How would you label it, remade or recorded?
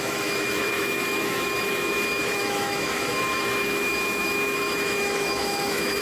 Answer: remade